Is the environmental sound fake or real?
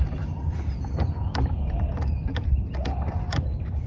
real